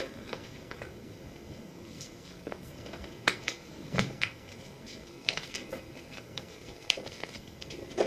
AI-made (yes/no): yes